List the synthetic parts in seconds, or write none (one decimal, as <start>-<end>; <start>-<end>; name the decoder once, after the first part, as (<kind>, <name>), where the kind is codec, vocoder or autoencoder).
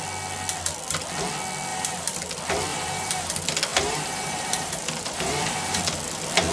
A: 1.7-2.3 (vocoder, BigVGAN v2); 2.7-3.3; 3.7-5.8